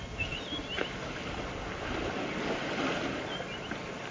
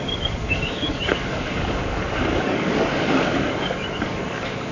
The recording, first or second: first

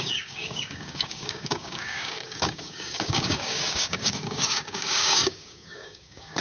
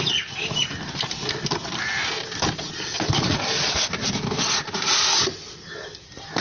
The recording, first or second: second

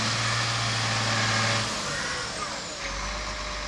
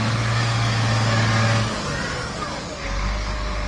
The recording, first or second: first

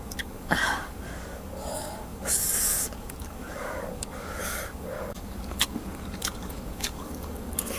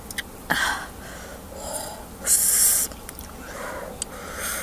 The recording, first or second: second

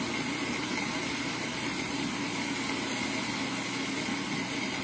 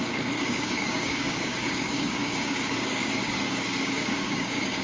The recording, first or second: first